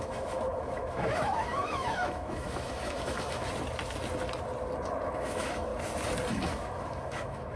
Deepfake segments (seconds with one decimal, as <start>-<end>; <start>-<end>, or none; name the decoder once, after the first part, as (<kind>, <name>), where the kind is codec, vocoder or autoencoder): 0.0-3.4 (autoencoder, DAC-VAE); 5.1-5.7; 6.3-7.6